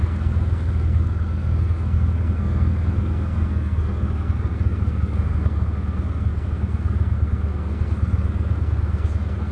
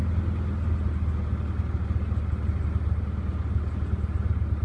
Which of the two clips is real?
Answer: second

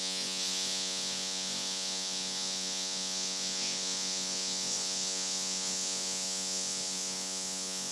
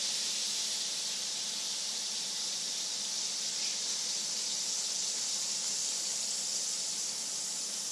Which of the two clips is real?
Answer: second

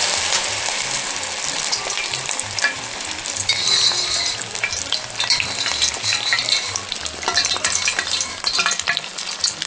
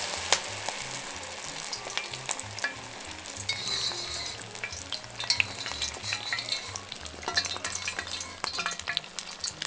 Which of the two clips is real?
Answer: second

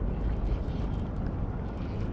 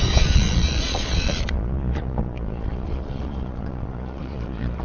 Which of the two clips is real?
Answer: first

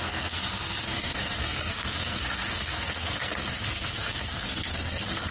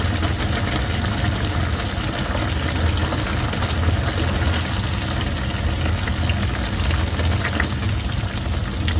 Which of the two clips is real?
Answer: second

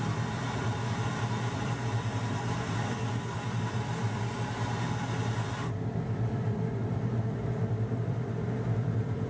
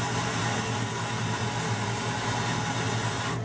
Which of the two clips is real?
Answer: second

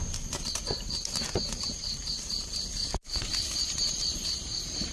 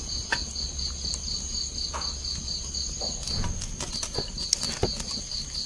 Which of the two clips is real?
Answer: second